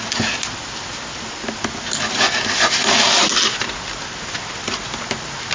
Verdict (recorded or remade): recorded